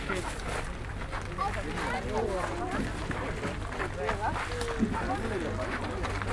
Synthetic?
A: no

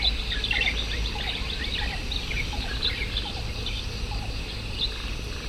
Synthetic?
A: no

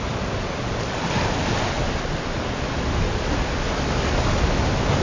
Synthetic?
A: no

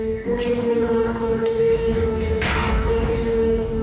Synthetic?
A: yes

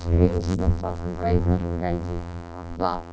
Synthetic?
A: yes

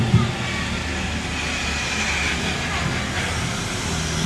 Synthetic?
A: no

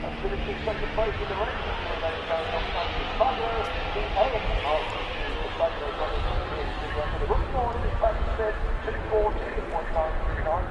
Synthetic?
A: no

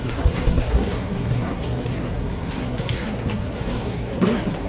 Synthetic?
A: yes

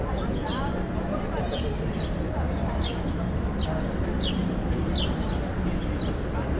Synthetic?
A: no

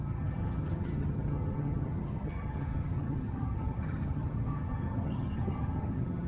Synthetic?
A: yes